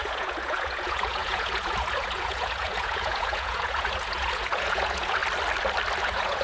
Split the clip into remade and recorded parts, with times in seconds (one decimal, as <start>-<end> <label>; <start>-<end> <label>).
0.0-5.2 remade; 5.2-6.0 recorded; 6.0-6.4 remade